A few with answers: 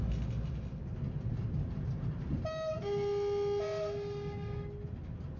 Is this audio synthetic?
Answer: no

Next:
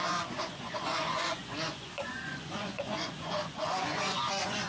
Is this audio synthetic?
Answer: yes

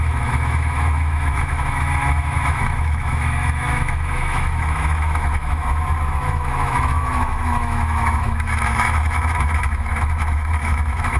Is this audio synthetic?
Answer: yes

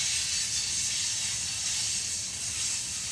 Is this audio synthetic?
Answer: no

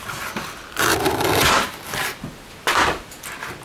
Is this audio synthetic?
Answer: yes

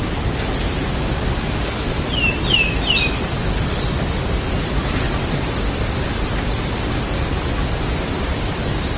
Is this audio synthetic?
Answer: no